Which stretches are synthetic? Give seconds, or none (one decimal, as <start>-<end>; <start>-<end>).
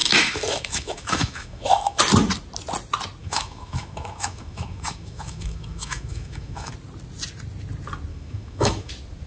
0.0-2.0; 3.2-6.7; 8.1-8.9